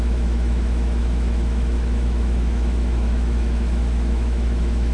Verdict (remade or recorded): remade